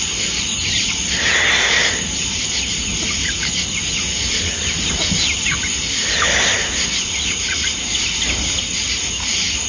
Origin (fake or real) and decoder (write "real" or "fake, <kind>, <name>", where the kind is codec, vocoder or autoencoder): real